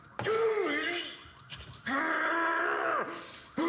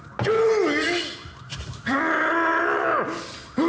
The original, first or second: second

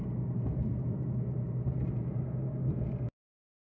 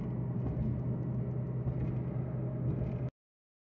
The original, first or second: second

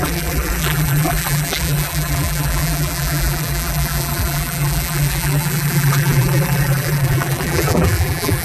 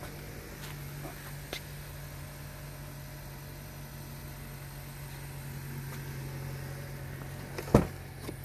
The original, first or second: second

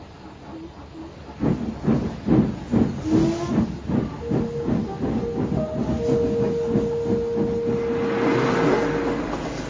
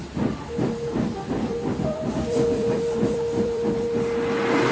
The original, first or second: first